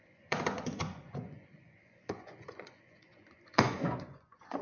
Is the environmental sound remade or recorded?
remade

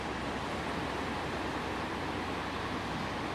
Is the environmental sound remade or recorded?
recorded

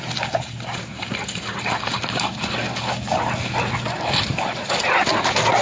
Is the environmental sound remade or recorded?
recorded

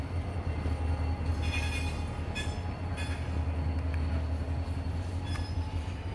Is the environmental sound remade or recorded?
recorded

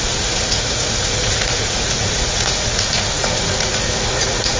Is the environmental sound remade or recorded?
remade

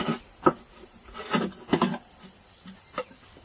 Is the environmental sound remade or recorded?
recorded